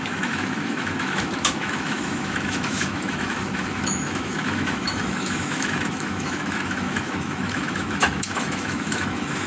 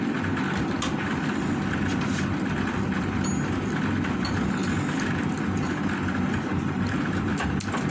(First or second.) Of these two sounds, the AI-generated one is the first